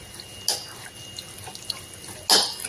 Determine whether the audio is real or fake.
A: real